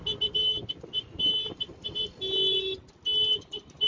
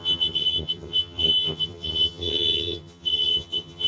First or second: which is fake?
second